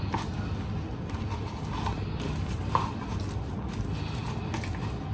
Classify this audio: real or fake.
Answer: real